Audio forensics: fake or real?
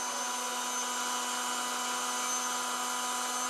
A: real